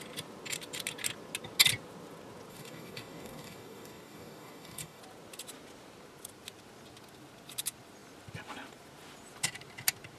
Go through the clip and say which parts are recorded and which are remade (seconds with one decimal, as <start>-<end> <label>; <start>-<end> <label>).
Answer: 0.0-2.5 recorded; 2.5-5.0 remade; 5.0-10.2 recorded